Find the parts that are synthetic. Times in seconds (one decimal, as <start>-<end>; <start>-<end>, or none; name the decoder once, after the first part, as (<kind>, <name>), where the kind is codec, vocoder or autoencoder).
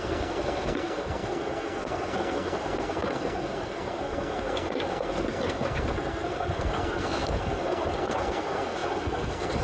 0.0-9.6 (codec, SNAC)